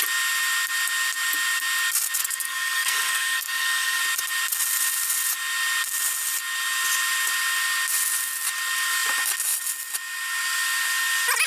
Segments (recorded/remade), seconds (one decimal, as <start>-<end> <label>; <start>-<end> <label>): 0.0-2.2 recorded; 2.2-4.0 remade; 4.0-11.5 recorded